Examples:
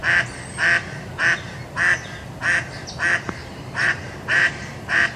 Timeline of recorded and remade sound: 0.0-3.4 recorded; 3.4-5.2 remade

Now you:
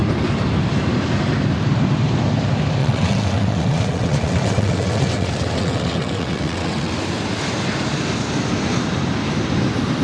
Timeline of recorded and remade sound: 0.0-2.8 recorded; 2.8-7.0 remade; 7.0-10.0 recorded

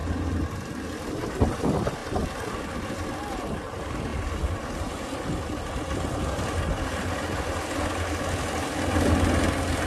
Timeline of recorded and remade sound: 0.0-9.9 recorded

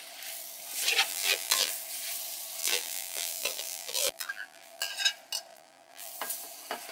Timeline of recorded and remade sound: 0.0-1.1 recorded; 1.1-1.7 remade; 1.7-2.6 recorded; 2.6-4.9 remade; 4.9-5.5 recorded; 5.5-6.1 remade; 6.1-6.9 recorded